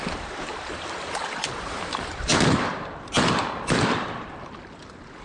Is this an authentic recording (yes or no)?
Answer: no